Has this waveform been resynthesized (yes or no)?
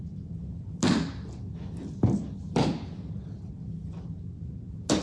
no